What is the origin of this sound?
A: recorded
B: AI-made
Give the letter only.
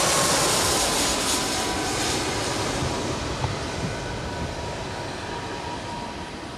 A